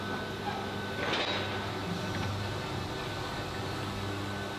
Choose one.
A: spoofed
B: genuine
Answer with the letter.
B